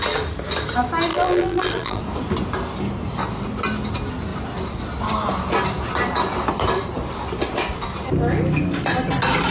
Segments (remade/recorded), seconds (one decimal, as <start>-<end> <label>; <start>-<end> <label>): 0.0-1.1 recorded; 1.1-2.0 remade; 2.0-9.5 recorded